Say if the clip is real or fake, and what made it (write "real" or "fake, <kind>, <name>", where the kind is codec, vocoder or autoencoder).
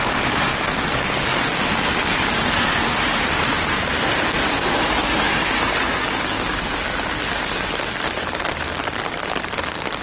real